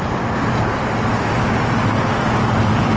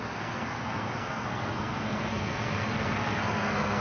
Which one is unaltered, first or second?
first